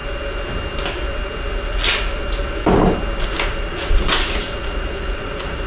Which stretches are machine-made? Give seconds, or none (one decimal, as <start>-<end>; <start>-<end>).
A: 3.4-5.7